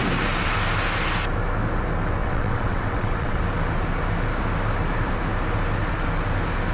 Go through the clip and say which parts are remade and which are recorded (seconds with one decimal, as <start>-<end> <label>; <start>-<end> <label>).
0.0-2.2 recorded; 2.2-3.4 remade; 3.4-6.7 recorded